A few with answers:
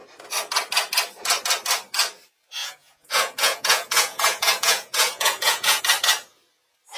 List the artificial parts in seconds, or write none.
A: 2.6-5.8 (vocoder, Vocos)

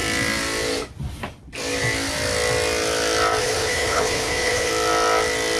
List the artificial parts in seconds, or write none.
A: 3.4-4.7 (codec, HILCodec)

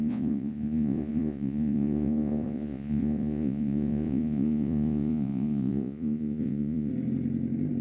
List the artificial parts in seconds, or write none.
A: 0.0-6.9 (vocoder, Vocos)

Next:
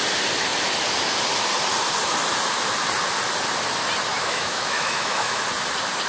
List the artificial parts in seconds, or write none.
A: 4.1-5.4 (autoencoder, DAC-VAE)

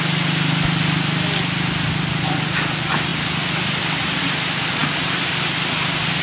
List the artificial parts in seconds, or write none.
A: none

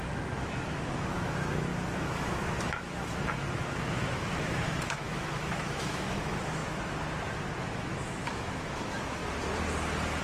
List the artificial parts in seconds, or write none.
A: 0.0-6.6 (autoencoder, DAC-VAE); 7.6-9.2

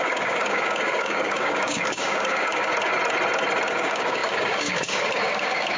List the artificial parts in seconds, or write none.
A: 0.0-2.7 (codec, DAC); 3.7-5.8